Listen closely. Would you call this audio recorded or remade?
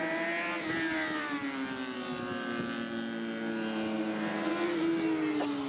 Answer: recorded